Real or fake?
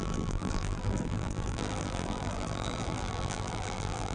fake